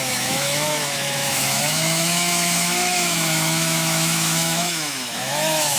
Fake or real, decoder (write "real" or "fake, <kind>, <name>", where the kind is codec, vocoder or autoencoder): fake, autoencoder, DAC-VAE